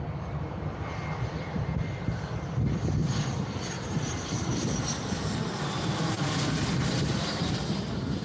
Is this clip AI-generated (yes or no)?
yes